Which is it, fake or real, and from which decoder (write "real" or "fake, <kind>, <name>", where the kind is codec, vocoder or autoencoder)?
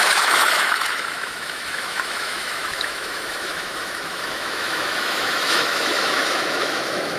fake, autoencoder, DAC-VAE